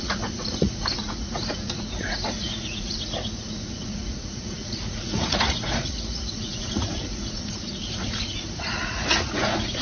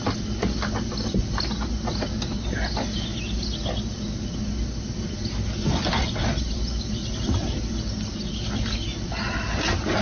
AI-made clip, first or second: first